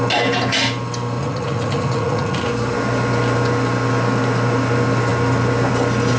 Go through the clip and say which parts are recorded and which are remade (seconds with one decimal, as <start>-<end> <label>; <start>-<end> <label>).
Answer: 0.0-1.2 recorded; 1.2-2.5 remade; 2.5-6.2 recorded